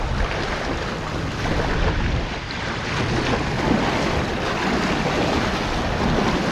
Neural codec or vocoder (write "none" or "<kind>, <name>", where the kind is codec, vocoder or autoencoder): none